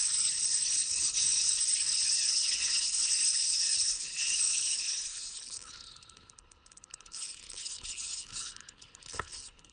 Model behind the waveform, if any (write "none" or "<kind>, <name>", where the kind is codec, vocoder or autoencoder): codec, HILCodec